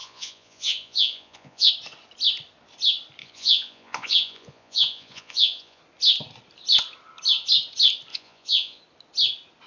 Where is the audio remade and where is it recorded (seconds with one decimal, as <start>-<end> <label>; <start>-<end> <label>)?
0.0-1.7 remade; 1.7-3.2 recorded; 3.2-5.8 remade; 5.8-8.1 recorded; 8.1-8.8 remade; 8.8-9.7 recorded